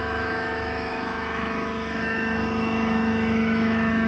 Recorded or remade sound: remade